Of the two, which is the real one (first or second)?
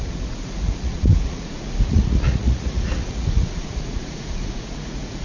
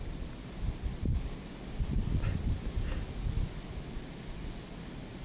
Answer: second